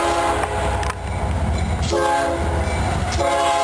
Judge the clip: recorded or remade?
recorded